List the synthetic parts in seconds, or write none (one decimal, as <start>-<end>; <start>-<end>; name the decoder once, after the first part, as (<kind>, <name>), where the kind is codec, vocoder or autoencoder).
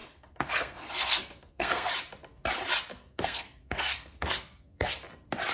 0.0-1.9 (codec, SNAC); 2.9-4.9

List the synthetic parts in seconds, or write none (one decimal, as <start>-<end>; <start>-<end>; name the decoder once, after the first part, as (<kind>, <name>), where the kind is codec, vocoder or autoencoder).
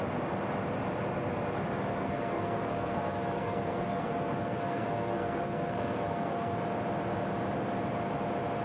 2.0-6.6 (codec, SNAC)